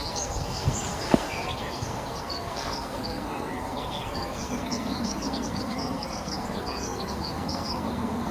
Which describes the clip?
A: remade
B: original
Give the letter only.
A